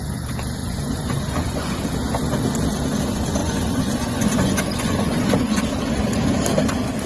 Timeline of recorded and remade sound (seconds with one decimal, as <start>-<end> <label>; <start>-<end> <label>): 0.0-0.6 recorded; 0.6-1.9 remade; 1.9-3.4 recorded; 3.4-5.6 remade; 5.6-7.1 recorded